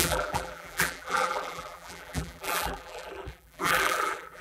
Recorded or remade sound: remade